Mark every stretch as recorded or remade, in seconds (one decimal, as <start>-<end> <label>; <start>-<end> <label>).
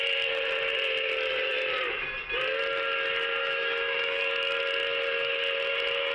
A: 0.0-3.4 recorded; 3.4-4.2 remade; 4.2-6.1 recorded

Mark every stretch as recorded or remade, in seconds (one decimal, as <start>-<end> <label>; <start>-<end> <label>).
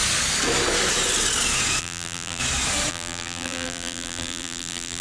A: 0.0-1.8 recorded; 1.8-2.4 remade; 2.4-2.9 recorded; 2.9-5.0 remade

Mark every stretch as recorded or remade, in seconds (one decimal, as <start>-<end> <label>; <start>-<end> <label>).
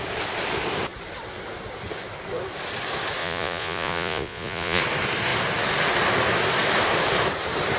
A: 0.0-3.2 recorded; 3.2-4.8 remade; 4.8-7.8 recorded